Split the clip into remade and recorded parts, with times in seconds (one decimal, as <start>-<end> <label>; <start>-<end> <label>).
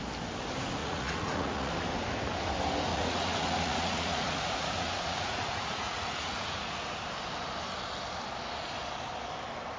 0.0-0.8 recorded; 0.8-1.7 remade; 1.7-2.9 recorded; 2.9-7.0 remade; 7.0-9.8 recorded